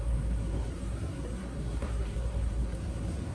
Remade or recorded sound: remade